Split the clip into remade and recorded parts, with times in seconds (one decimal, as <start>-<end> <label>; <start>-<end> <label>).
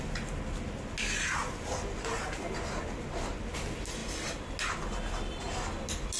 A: 0.0-6.2 recorded